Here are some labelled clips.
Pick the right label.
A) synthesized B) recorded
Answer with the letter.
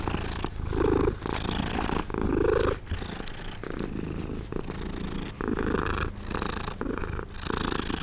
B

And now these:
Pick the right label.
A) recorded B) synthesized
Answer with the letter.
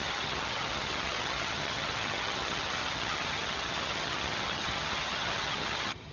B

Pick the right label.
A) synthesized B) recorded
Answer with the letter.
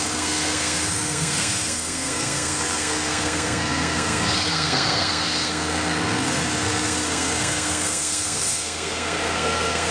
A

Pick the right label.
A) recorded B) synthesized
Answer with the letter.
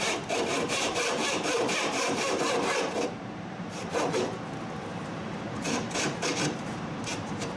B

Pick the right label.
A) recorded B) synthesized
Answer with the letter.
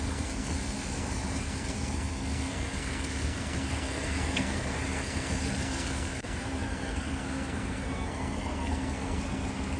B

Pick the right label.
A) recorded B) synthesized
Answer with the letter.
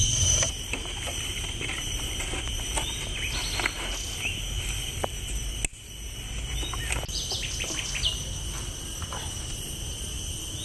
A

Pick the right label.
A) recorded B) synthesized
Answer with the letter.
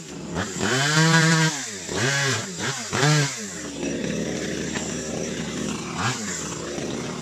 A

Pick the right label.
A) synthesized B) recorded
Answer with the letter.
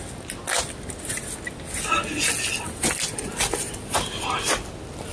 B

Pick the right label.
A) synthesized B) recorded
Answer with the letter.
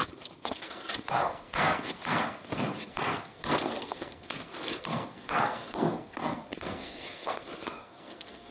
A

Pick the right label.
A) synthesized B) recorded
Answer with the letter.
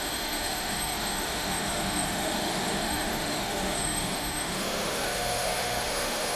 A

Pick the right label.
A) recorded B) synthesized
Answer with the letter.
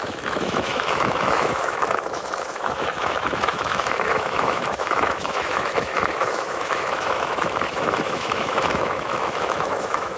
B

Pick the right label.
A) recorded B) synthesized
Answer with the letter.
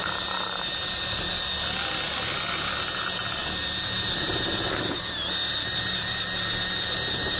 A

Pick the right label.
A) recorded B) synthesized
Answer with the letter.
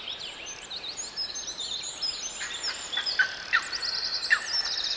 A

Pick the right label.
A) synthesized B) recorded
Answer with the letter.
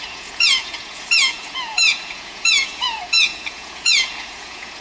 A